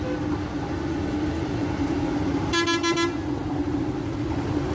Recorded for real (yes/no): yes